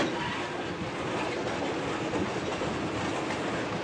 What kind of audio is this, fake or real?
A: real